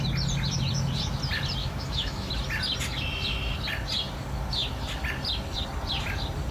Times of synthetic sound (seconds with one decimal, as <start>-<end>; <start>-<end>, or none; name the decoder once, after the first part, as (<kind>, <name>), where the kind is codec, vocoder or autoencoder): 1.6-2.3 (autoencoder, DAC-VAE)